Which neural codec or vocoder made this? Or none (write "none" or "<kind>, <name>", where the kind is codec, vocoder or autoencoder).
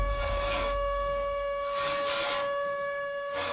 codec, DAC